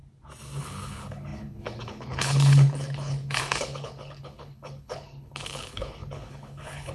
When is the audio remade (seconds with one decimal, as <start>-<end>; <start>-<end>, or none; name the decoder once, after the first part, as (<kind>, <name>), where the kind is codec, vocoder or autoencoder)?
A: 0.6-6.9 (codec, HILCodec)